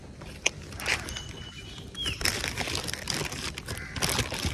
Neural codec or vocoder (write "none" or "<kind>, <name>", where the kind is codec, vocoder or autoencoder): none